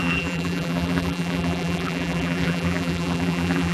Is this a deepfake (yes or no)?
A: yes